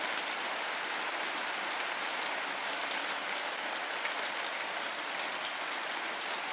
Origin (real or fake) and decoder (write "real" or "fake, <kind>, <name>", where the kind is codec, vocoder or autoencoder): real